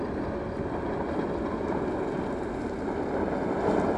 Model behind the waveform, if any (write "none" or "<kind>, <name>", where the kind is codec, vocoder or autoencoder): none